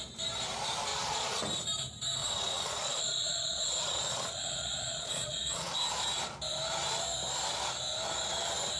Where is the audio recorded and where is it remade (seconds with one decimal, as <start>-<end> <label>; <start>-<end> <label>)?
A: 0.0-0.9 recorded; 0.9-1.4 remade; 1.4-2.2 recorded; 2.2-5.7 remade; 5.7-8.8 recorded